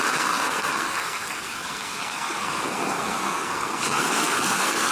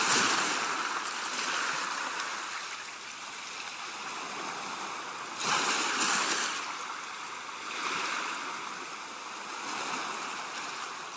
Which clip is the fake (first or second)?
first